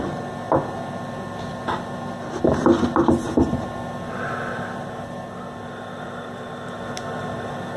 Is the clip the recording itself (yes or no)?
yes